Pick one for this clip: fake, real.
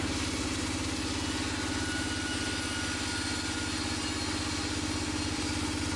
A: real